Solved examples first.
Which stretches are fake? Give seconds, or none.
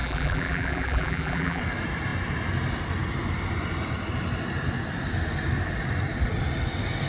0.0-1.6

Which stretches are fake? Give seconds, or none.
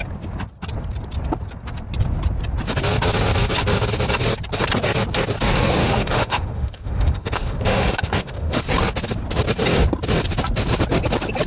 5.8-8.6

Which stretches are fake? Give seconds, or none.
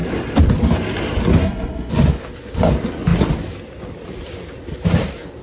1.4-1.9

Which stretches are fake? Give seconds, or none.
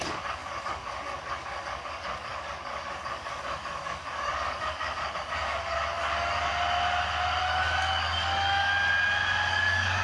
0.0-6.5; 7.4-8.7; 9.5-10.0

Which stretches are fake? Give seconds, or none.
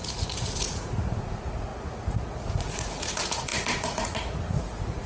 0.0-5.1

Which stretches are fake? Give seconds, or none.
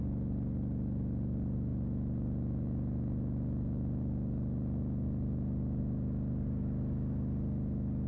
none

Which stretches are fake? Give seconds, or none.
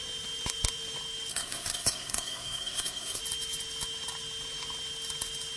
1.3-3.2